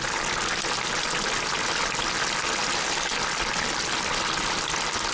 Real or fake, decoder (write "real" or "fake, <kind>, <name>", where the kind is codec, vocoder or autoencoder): real